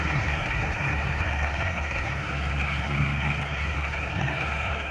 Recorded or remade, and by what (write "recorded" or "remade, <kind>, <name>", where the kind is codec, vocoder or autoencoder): remade, codec, SNAC